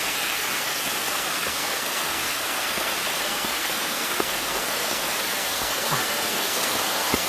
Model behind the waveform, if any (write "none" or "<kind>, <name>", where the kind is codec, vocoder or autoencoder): codec, SNAC